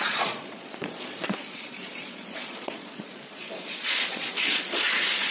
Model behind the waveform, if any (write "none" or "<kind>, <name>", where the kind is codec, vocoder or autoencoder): vocoder, Vocos